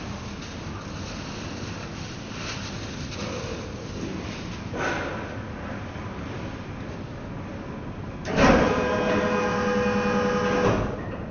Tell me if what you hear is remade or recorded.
recorded